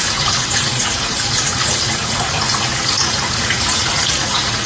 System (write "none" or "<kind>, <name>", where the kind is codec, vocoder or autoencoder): vocoder, Vocos